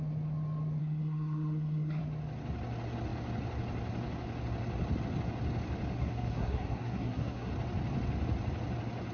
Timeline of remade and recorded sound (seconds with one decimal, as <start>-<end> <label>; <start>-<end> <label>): 0.0-0.8 recorded; 0.8-2.0 remade; 2.0-5.9 recorded; 5.9-7.5 remade; 7.5-9.1 recorded